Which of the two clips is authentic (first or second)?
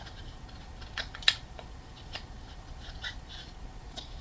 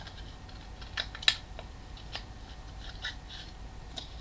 second